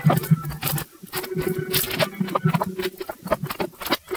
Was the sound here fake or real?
real